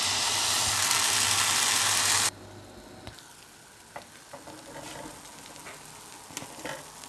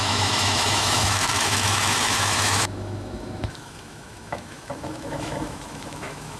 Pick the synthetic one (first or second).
second